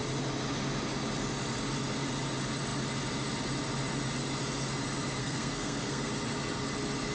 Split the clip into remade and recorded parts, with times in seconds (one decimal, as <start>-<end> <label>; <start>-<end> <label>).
0.0-5.2 recorded; 5.2-6.1 remade; 6.1-7.1 recorded